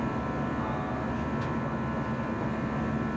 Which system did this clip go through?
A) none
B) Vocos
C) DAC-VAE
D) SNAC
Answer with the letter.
A